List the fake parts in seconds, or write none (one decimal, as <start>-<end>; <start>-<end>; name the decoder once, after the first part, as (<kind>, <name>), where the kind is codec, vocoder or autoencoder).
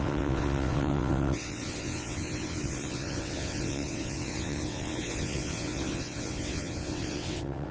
0.0-7.7 (vocoder, WaveNeXt)